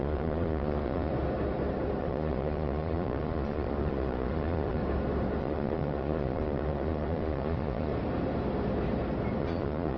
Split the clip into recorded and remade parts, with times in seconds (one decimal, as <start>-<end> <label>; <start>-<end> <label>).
0.0-1.1 remade; 1.1-2.0 recorded; 2.0-4.8 remade; 4.8-5.4 recorded; 5.4-7.9 remade; 7.9-9.4 recorded; 9.4-10.0 remade